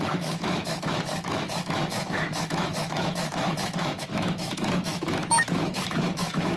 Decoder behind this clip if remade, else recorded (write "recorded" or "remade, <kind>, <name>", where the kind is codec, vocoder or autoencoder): remade, autoencoder, DAC-VAE